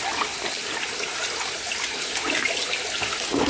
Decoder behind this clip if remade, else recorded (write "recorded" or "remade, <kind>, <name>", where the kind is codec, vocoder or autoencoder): recorded